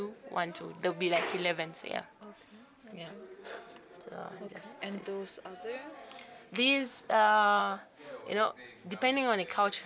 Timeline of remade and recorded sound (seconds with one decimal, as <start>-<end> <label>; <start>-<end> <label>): 0.0-7.6 recorded; 7.6-8.1 remade; 8.1-9.9 recorded